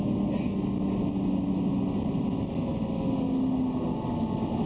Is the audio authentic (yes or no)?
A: yes